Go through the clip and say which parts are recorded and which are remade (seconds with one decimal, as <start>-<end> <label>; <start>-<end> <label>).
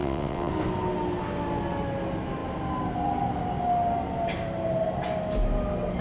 0.0-0.5 remade; 0.5-6.0 recorded